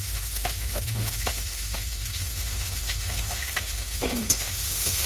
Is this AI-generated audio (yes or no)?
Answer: yes